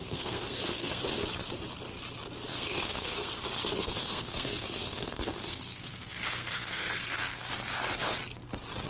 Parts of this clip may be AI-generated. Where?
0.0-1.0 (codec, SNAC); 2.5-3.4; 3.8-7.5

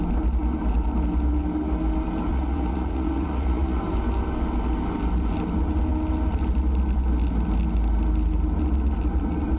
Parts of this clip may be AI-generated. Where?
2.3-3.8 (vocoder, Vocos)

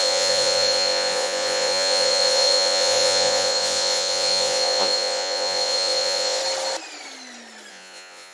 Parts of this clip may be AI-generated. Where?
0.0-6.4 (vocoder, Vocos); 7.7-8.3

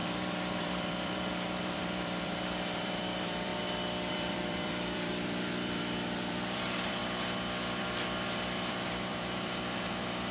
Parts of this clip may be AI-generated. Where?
0.0-3.5 (vocoder, BigVGAN v2); 4.1-7.0; 8.7-10.3